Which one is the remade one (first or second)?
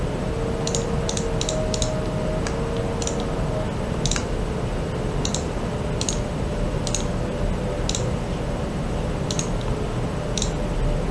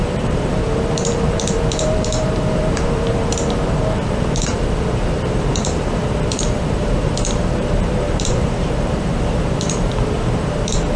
second